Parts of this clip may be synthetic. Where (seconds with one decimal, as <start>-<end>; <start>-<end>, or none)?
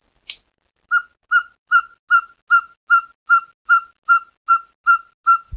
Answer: none